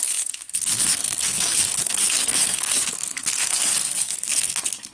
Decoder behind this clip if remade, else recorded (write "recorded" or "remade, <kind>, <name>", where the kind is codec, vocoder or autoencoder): remade, codec, SNAC